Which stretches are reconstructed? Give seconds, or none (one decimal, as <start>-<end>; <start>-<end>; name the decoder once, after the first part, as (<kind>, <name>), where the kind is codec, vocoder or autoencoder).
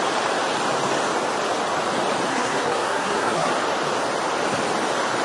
2.3-3.5 (codec, SNAC)